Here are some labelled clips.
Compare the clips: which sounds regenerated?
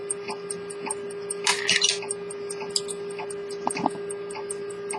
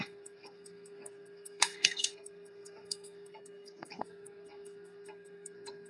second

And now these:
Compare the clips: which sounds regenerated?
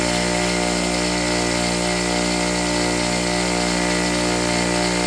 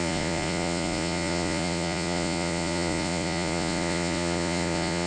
second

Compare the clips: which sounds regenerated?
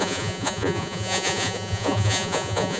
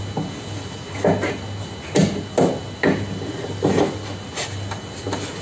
first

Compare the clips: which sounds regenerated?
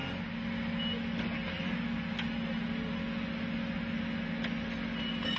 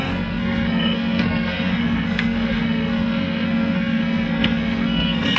second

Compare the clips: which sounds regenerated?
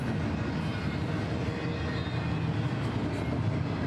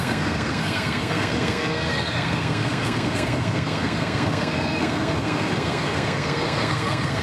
second